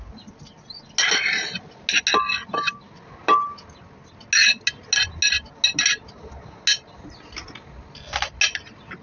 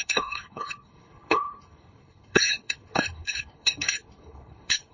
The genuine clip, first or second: first